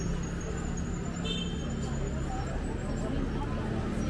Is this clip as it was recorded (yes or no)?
yes